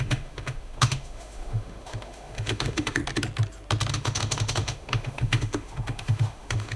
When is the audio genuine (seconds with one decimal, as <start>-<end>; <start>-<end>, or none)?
3.0-3.9